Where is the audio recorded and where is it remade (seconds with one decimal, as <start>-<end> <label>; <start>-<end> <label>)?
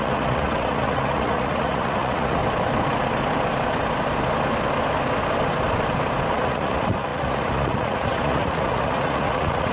0.0-2.4 remade; 2.4-6.3 recorded; 6.3-9.7 remade